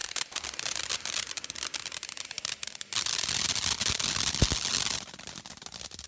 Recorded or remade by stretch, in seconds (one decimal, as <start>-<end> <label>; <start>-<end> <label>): 0.0-6.1 recorded